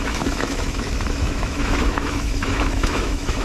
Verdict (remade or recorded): remade